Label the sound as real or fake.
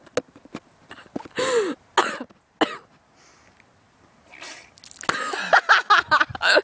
real